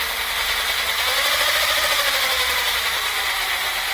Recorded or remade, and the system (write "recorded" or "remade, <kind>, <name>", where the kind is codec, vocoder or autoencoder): recorded